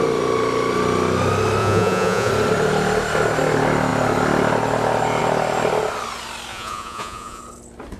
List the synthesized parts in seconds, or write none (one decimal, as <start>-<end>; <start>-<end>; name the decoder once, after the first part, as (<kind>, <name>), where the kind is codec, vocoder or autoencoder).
1.6-2.3 (vocoder, Vocos); 6.5-7.4